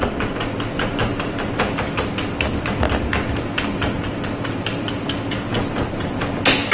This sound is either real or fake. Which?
real